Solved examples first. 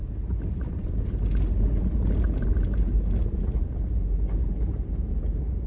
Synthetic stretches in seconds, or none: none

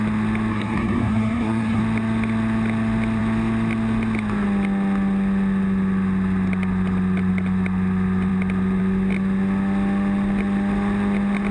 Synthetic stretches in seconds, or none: 0.5-1.8 (codec, SNAC)

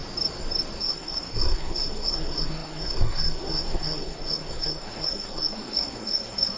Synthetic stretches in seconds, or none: 0.8-6.6 (codec, SNAC)

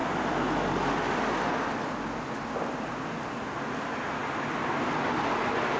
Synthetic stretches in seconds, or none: none